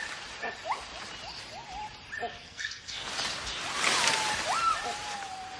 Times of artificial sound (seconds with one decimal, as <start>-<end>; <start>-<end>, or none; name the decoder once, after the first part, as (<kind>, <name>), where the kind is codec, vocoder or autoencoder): 2.3-3.1 (codec, SNAC)